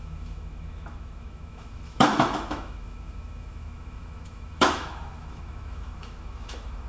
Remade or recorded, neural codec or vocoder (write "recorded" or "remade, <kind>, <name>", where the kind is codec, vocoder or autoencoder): remade, autoencoder, DAC-VAE